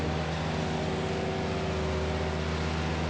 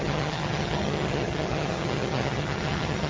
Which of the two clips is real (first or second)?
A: first